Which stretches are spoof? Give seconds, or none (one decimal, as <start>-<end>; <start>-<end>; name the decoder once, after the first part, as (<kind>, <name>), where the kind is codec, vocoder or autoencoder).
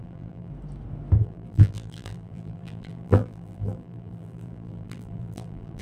0.0-0.5 (vocoder, BigVGAN v2); 1.2-5.8